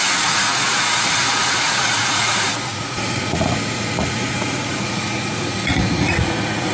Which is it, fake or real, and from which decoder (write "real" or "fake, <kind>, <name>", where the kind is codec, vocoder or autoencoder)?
fake, vocoder, Vocos